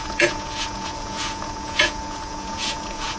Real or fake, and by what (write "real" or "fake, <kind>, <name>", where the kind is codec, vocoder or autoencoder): fake, vocoder, Vocos